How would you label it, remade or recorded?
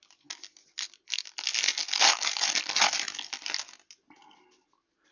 recorded